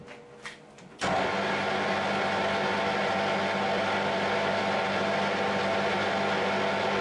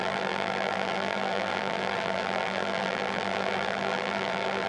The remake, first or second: second